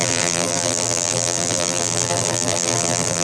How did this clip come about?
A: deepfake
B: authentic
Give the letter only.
A